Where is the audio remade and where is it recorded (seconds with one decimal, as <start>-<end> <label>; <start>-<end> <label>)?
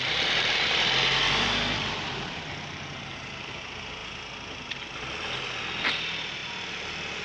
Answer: 0.0-7.2 recorded